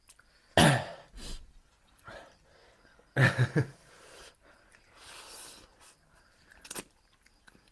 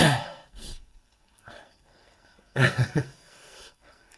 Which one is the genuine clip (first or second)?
first